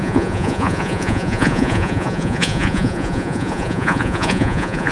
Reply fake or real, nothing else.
fake